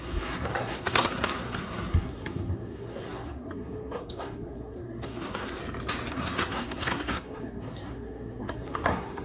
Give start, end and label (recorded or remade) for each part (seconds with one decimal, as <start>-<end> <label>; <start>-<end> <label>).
0.0-5.6 remade; 5.6-6.1 recorded; 6.1-9.2 remade